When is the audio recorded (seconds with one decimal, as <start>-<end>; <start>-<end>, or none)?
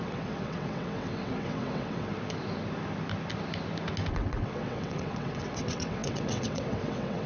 2.1-4.1